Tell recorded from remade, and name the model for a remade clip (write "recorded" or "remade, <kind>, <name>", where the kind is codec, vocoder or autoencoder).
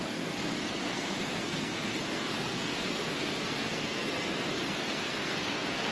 remade, codec, SNAC